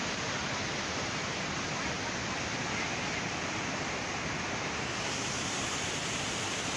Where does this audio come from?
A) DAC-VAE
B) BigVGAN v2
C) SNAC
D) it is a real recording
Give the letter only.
D